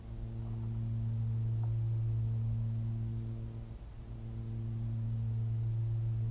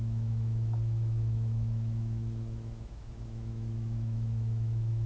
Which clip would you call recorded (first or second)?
first